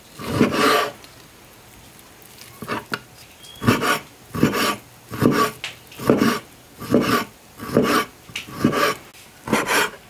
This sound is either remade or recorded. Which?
recorded